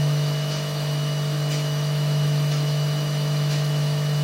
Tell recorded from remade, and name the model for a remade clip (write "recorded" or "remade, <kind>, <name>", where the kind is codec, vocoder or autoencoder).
remade, autoencoder, DAC-VAE